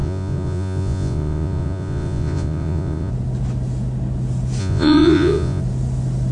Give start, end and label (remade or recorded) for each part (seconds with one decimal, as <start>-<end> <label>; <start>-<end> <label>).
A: 0.0-3.1 remade; 3.1-4.6 recorded; 4.6-5.6 remade; 5.6-6.3 recorded